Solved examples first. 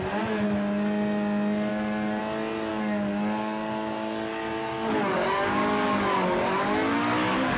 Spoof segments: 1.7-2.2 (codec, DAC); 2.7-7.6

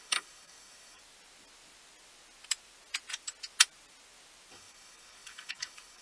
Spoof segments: 0.0-1.0 (codec, DAC); 4.5-6.0

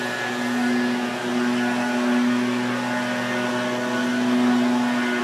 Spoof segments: none

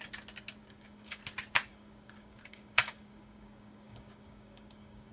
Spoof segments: 0.6-1.2 (codec, DAC); 1.7-5.1